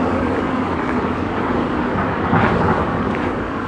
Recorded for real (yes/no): no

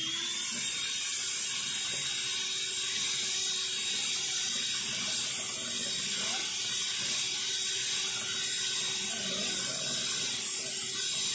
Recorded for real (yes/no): yes